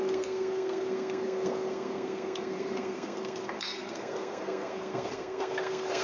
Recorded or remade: remade